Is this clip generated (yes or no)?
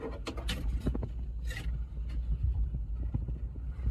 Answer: no